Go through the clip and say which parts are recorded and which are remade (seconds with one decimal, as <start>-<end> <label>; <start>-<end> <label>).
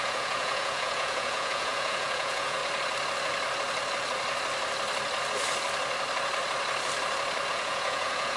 0.0-2.6 remade; 2.6-7.5 recorded; 7.5-8.4 remade